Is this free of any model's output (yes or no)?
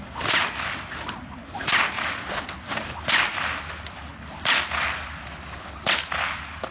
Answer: yes